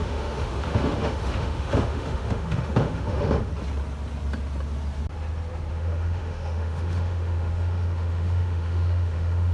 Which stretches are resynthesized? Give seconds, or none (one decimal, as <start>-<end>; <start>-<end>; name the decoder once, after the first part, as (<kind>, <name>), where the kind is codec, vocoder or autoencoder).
0.0-3.5 (autoencoder, DAC-VAE); 5.7-9.5